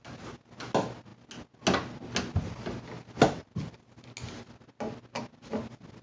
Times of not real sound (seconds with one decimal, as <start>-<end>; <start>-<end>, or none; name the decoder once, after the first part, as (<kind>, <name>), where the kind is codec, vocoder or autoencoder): none